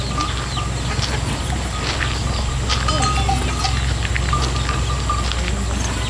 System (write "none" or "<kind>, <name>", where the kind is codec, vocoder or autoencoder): none